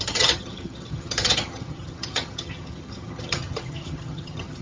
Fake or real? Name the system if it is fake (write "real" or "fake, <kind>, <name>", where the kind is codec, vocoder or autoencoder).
fake, vocoder, HiFi-GAN